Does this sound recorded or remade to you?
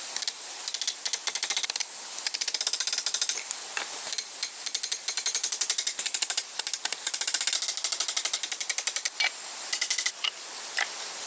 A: recorded